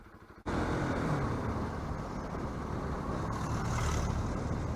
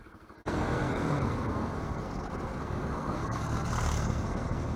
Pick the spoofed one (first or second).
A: second